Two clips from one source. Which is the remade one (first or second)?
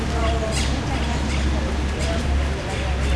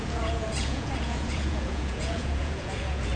second